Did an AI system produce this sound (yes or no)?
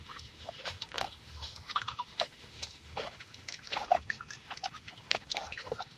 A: yes